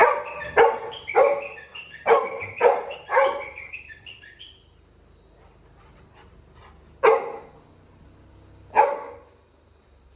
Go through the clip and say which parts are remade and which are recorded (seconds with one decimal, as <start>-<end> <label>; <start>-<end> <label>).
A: 0.0-1.7 recorded; 1.7-4.4 remade; 4.4-10.2 recorded